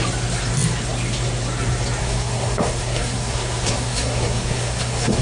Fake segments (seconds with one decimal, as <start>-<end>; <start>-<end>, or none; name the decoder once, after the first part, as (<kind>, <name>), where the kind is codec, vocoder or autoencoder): 2.0-5.2 (codec, SNAC)